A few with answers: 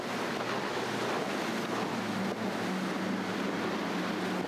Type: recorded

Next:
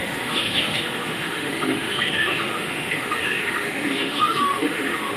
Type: remade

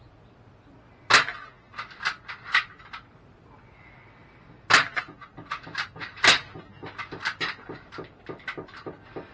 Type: recorded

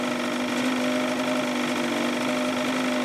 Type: recorded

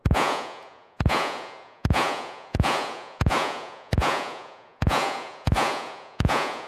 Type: remade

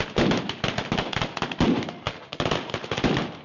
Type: recorded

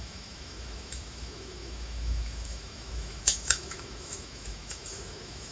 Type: remade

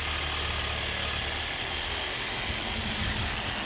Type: recorded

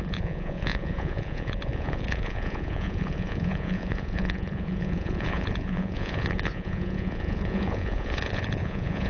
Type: remade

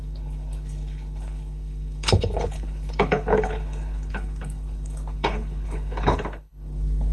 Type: remade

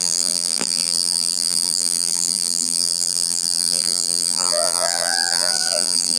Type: remade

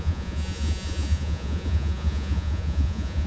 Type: remade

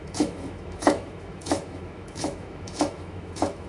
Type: remade